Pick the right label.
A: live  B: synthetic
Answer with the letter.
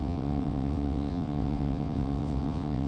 B